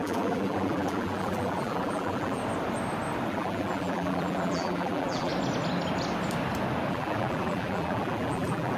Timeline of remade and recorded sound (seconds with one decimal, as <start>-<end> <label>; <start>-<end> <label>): 0.0-2.4 remade; 2.4-3.3 recorded; 3.3-5.3 remade; 5.3-6.9 recorded; 6.9-8.8 remade